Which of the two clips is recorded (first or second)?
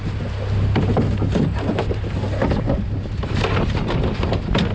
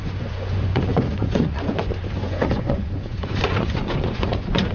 first